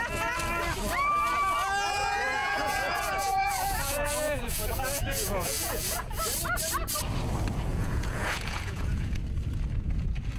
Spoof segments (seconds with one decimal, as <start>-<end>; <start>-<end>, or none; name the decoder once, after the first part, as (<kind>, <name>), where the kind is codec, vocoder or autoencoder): 2.4-6.2 (vocoder, Vocos); 7.7-9.2